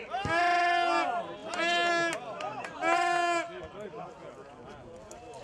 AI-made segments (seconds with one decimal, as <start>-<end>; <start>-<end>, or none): none